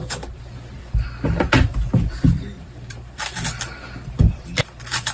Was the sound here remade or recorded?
remade